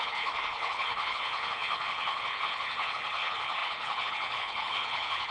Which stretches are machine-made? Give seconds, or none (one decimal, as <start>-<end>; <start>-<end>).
0.0-5.3

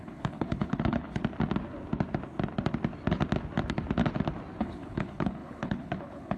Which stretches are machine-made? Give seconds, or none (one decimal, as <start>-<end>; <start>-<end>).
0.0-1.2; 4.6-6.4

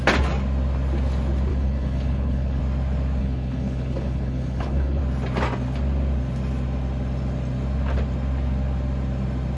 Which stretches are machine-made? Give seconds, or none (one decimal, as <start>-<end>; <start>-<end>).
1.5-2.6; 3.2-5.0

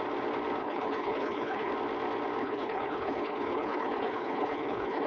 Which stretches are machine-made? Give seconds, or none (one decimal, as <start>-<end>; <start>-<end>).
0.6-1.7; 2.4-5.1

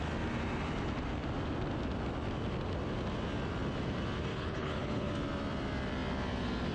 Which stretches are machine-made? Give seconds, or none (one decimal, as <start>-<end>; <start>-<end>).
4.3-5.1

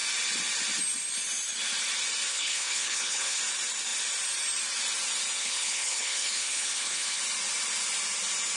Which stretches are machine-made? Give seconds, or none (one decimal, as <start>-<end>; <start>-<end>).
2.3-3.4; 5.4-7.2

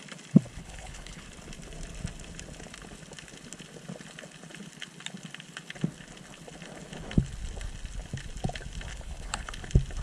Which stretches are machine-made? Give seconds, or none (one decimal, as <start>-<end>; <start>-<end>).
0.6-1.2; 8.9-9.5

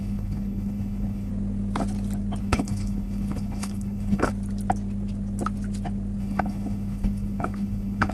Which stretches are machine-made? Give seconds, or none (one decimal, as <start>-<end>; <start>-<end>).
0.0-1.3; 2.4-4.3; 6.2-8.1